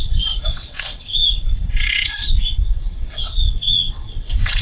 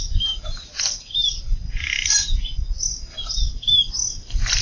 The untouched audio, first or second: second